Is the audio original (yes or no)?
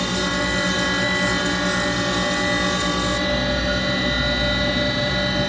yes